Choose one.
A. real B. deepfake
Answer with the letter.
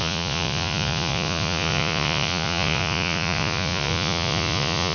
B